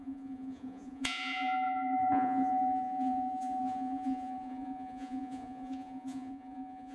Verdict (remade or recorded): remade